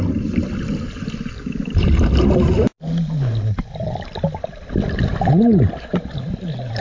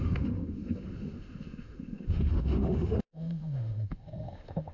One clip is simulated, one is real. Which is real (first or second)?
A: first